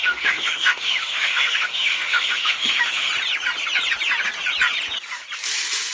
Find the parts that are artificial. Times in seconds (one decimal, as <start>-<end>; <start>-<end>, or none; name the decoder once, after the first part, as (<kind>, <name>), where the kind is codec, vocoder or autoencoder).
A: 0.0-3.1 (autoencoder, DAC-VAE)